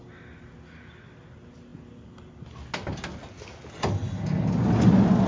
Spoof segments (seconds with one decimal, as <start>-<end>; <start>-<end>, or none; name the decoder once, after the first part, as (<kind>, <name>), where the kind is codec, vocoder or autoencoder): none